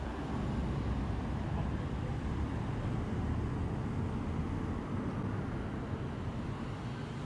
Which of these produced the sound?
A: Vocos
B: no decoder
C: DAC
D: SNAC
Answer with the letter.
B